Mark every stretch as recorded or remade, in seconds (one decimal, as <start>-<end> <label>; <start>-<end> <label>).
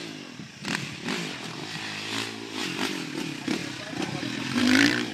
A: 0.0-0.8 recorded; 0.8-2.6 remade; 2.6-3.2 recorded; 3.2-3.6 remade; 3.6-4.6 recorded; 4.6-5.1 remade